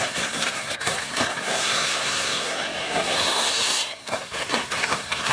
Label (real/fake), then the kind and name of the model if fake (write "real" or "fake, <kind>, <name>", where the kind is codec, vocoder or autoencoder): fake, codec, SNAC